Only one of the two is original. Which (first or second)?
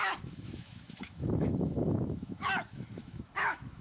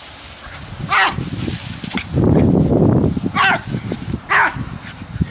second